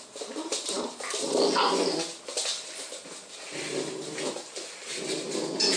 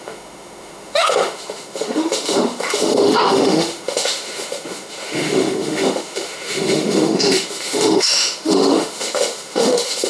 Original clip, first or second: first